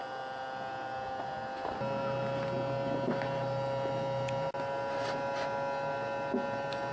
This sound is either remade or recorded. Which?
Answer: recorded